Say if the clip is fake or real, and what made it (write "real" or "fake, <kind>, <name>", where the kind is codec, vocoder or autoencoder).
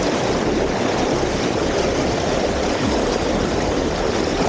real